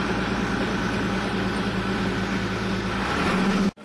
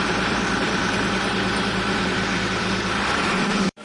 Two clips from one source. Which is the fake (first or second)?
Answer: second